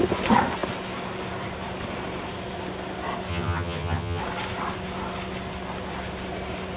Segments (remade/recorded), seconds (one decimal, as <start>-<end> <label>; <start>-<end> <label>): 0.0-3.3 recorded; 3.3-4.2 remade; 4.2-6.8 recorded